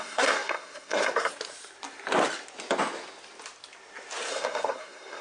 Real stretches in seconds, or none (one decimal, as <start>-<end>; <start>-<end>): 1.3-4.3